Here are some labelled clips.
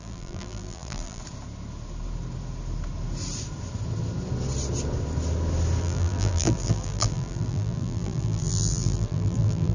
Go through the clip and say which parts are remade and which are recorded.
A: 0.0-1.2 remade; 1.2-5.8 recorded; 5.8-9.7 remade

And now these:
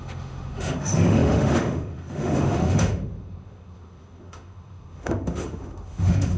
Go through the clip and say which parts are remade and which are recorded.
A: 0.0-6.4 remade

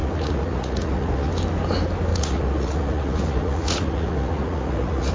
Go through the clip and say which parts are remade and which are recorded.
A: 0.0-1.3 remade; 1.3-2.1 recorded; 2.1-5.1 remade

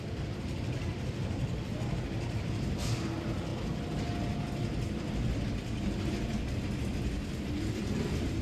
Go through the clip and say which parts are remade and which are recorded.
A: 0.0-3.5 remade; 3.5-7.8 recorded; 7.8-8.4 remade

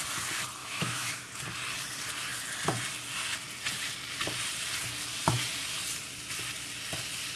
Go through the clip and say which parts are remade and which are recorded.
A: 0.0-0.6 recorded; 0.6-1.3 remade; 1.3-7.4 recorded